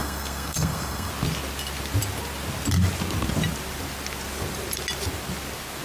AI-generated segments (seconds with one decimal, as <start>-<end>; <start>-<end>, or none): 0.0-1.1